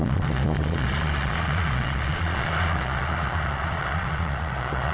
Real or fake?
fake